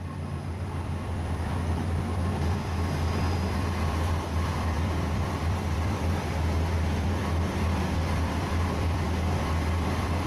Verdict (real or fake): fake